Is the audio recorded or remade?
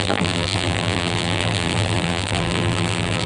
remade